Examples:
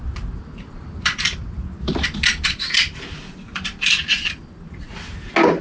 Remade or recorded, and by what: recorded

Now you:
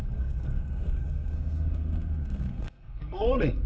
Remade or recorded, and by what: remade, codec, SNAC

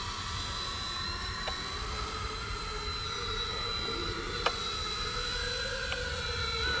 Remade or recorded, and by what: recorded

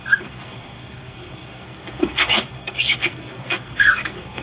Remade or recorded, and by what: remade, codec, SNAC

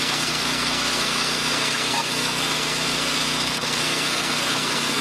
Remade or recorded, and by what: remade, codec, SNAC